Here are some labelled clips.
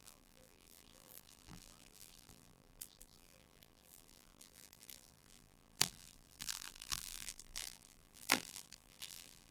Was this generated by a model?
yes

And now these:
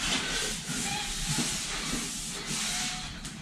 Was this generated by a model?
no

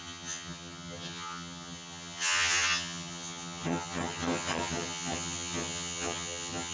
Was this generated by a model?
yes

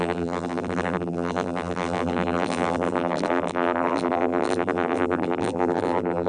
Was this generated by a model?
yes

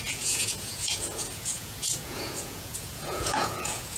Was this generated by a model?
yes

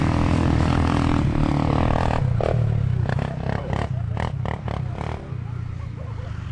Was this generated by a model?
no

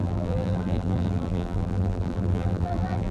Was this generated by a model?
yes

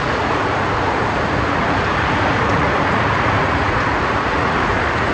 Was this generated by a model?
yes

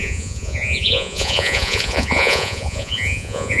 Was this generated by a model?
yes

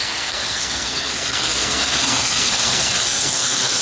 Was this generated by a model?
yes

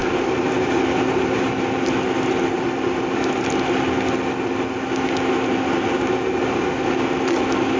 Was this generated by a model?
no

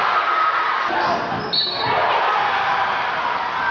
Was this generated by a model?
no